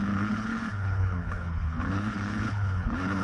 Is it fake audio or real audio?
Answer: fake